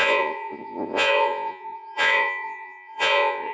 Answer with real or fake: fake